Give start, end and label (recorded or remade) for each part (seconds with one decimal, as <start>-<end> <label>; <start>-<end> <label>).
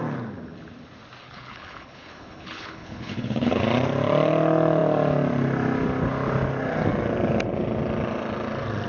0.0-1.2 recorded; 1.2-3.6 remade; 3.6-8.9 recorded